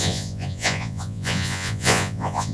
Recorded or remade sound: remade